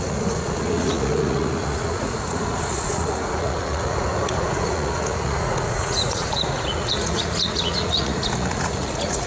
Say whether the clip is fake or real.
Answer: fake